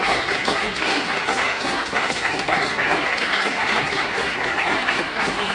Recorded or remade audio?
remade